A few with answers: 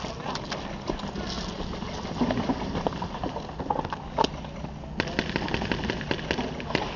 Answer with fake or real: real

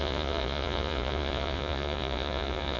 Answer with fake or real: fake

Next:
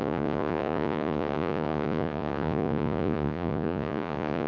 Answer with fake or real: fake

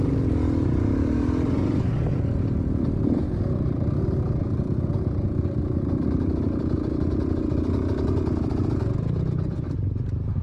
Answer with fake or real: real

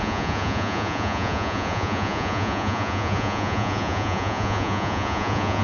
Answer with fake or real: fake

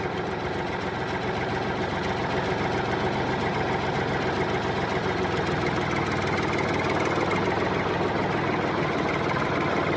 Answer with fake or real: real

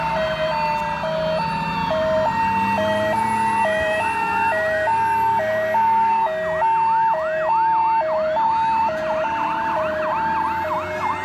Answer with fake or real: real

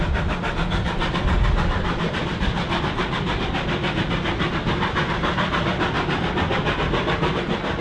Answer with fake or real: real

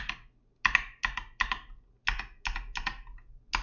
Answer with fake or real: real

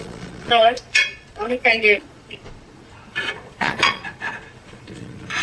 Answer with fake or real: fake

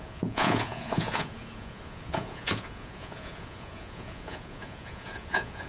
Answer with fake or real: fake